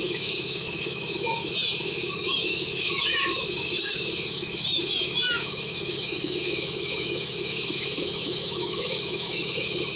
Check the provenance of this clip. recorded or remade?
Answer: remade